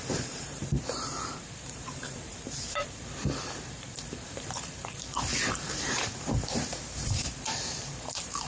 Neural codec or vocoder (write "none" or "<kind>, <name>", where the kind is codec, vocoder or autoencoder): vocoder, BigVGAN v2